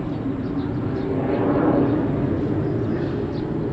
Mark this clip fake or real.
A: real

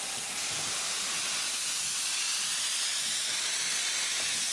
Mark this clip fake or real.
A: real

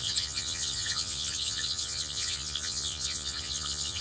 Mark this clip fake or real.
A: fake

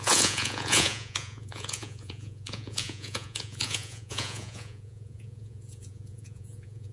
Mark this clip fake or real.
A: fake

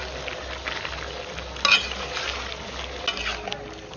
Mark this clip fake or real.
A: real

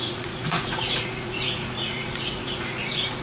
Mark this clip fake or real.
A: fake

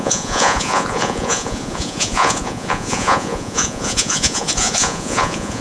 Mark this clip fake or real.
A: fake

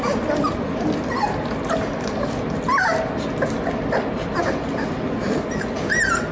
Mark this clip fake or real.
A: real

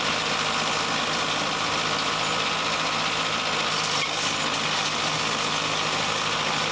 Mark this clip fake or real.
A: real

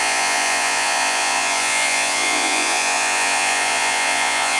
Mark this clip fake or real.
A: fake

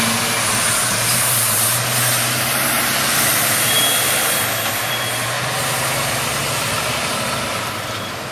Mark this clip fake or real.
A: real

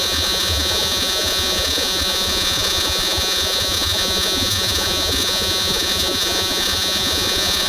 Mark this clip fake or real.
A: fake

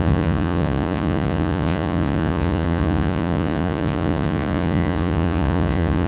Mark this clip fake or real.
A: fake